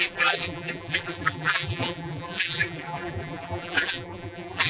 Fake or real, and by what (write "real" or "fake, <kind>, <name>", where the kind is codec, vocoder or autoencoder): fake, vocoder, BigVGAN v2